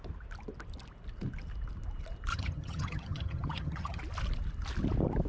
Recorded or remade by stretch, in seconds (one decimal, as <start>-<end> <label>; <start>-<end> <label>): 0.0-2.3 recorded; 2.3-4.0 remade; 4.0-5.3 recorded